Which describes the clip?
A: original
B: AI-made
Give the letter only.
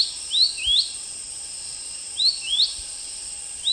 A